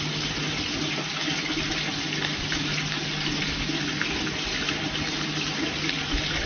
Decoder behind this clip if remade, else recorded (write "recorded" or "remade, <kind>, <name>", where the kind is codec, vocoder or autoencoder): recorded